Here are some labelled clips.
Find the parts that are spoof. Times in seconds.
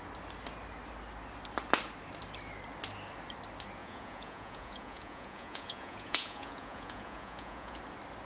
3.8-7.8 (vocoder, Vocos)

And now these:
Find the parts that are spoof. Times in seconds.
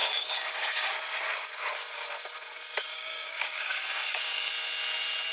0.0-0.9 (codec, DAC); 2.9-4.5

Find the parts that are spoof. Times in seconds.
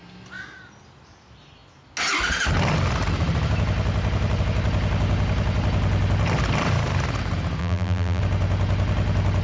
7.6-8.2 (vocoder, BigVGAN v2)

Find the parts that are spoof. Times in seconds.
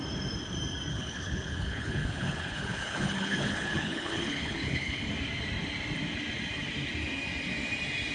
0.9-5.1 (codec, HILCodec)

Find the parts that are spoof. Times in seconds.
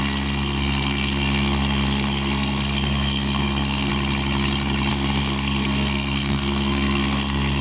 0.0-3.9 (codec, SNAC); 4.9-7.6